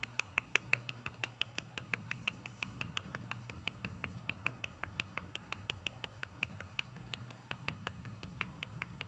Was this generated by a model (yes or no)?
yes